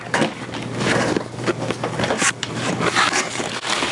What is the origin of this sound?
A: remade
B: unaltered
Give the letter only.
A